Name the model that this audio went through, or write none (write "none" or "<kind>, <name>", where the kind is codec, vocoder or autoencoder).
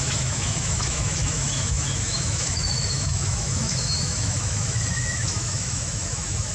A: autoencoder, DAC-VAE